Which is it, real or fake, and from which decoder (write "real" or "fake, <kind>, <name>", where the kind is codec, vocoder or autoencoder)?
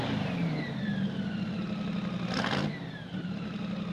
real